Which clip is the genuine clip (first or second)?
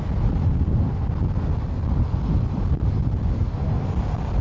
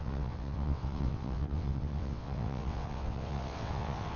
first